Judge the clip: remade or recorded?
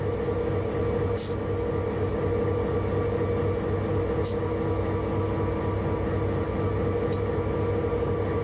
recorded